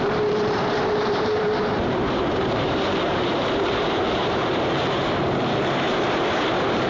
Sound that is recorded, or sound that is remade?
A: remade